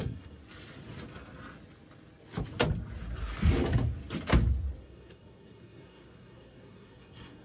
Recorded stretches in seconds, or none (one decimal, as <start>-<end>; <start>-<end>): 0.4-4.8